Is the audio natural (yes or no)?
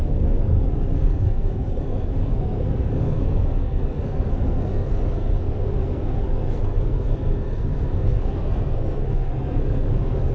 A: no